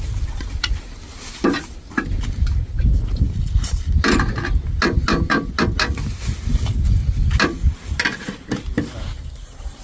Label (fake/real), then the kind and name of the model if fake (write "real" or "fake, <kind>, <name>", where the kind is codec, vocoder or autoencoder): real